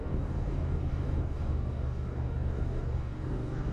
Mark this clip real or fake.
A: fake